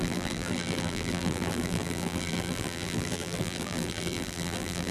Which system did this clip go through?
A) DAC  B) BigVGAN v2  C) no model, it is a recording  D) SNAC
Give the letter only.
B